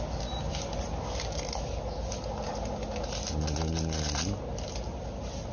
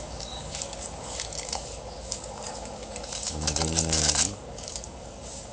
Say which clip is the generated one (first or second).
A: second